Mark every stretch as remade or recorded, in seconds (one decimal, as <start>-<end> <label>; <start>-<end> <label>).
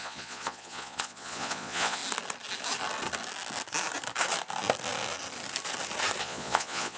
0.0-2.0 remade; 2.0-6.2 recorded; 6.2-7.0 remade